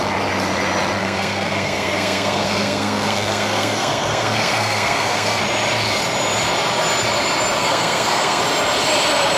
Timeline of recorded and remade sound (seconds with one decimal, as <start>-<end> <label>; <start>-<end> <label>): 0.0-1.0 recorded; 1.0-5.4 remade; 5.4-7.6 recorded; 7.6-8.4 remade; 8.4-9.4 recorded